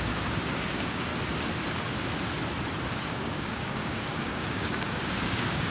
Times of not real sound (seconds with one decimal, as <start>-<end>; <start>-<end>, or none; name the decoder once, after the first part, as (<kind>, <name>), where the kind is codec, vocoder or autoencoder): 0.0-1.1 (codec, DAC); 2.9-5.7